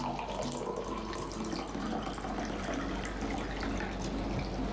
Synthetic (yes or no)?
no